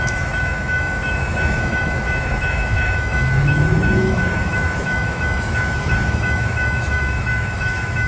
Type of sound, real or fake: fake